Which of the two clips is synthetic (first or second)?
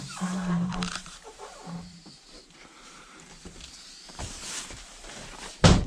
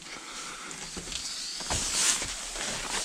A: first